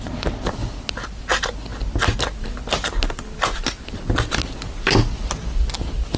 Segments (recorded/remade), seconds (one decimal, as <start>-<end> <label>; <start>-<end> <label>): 0.0-6.2 recorded

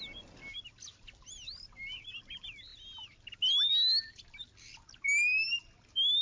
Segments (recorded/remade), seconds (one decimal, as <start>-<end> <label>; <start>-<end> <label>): 0.0-6.2 recorded

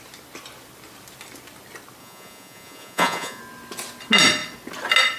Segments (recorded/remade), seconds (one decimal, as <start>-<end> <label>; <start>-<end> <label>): 0.0-2.0 recorded; 2.0-3.4 remade; 3.4-5.2 recorded